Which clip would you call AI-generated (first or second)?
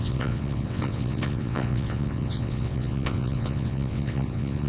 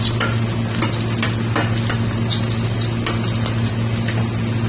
first